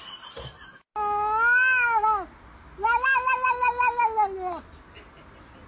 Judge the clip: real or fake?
real